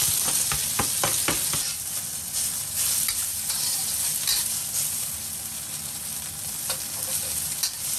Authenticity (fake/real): real